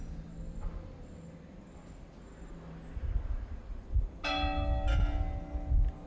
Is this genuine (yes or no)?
yes